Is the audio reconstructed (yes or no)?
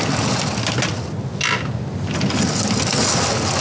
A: no